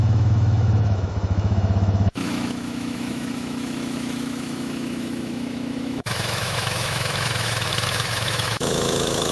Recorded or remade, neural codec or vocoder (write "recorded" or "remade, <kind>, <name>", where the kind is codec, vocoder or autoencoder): remade, autoencoder, DAC-VAE